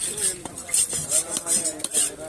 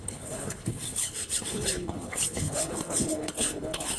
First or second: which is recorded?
first